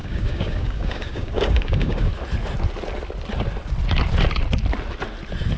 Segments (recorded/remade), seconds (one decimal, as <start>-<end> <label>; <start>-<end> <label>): 0.0-2.1 remade; 2.1-5.6 recorded